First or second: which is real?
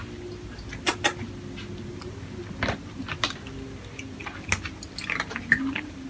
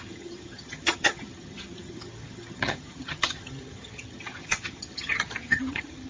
first